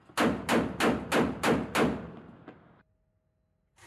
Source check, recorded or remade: recorded